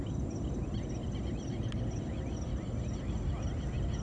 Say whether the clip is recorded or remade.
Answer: recorded